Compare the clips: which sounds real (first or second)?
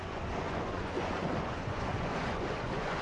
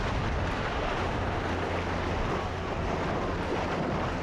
second